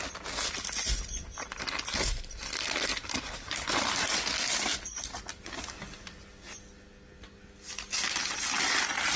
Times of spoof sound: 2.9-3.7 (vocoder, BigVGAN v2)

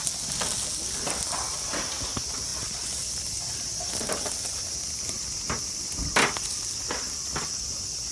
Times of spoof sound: none

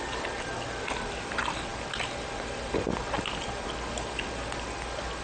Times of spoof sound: none

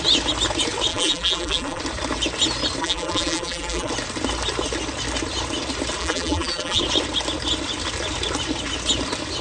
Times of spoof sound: 0.9-1.8 (vocoder, BigVGAN v2); 2.8-3.9; 6.0-6.8

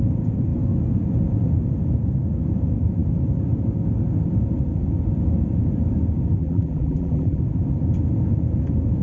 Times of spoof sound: 6.4-7.4 (vocoder, BigVGAN v2)